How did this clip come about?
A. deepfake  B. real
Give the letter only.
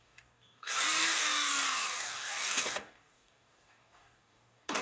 A